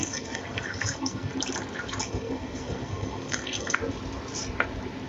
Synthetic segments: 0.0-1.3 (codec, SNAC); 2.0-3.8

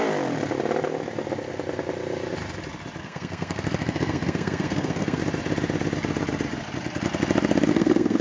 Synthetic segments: 3.0-5.2 (codec, SNAC); 7.7-8.2

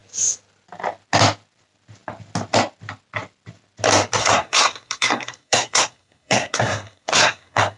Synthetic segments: 4.2-7.8 (codec, SNAC)

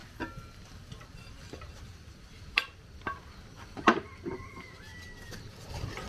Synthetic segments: none

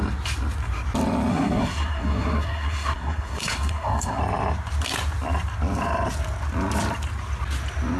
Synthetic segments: 1.3-4.2 (codec, SNAC)

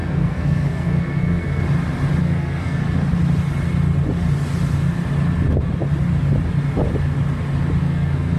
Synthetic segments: 0.0-1.6 (codec, SNAC); 2.2-2.8; 7.8-8.4

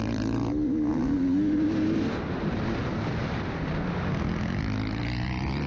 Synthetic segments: none

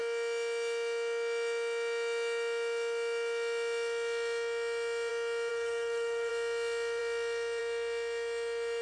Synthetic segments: 5.5-6.3 (codec, SNAC)